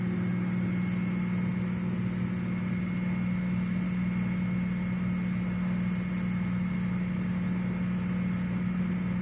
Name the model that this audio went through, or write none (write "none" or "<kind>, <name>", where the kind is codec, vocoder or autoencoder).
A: none